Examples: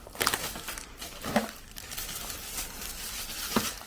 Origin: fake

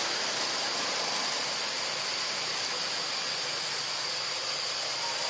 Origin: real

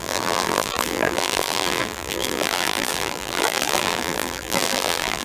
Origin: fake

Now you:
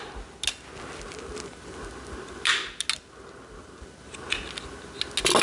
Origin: real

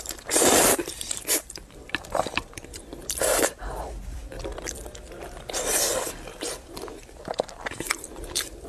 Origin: fake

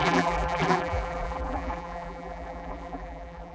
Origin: fake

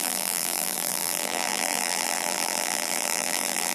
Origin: fake